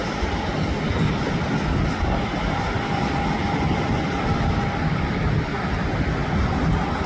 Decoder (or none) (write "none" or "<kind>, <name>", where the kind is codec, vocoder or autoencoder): none